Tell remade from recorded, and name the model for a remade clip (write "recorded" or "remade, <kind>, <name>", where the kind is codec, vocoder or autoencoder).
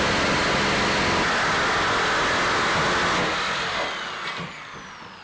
recorded